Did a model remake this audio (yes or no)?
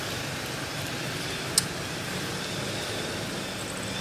no